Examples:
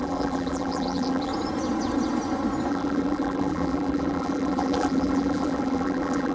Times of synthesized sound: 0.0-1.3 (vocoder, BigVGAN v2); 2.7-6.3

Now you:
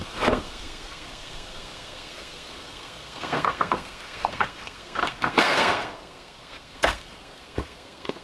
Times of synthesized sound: 0.0-8.2 (codec, SNAC)

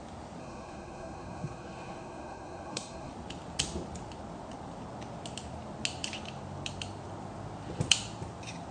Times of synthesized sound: 0.4-3.1 (codec, SNAC)

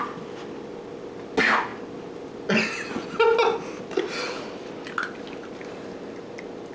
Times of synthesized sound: none

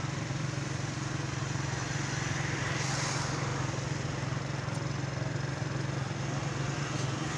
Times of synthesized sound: none

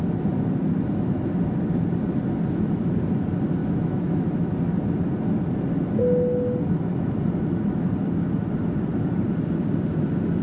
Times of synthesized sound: 3.6-4.5 (autoencoder, DAC-VAE)

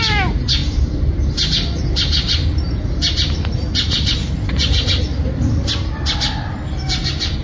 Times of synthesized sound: 0.6-4.6 (vocoder, BigVGAN v2)